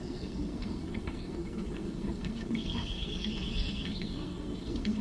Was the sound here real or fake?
fake